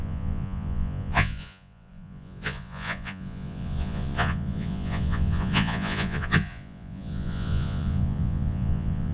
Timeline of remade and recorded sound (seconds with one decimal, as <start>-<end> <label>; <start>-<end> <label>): 0.0-9.1 remade